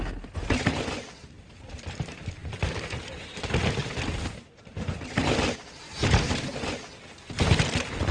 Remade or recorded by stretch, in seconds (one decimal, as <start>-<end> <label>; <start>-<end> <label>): 0.0-8.1 recorded